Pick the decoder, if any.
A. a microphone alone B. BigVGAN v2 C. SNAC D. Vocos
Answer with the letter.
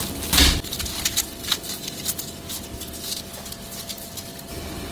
A